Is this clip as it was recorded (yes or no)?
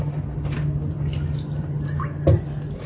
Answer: yes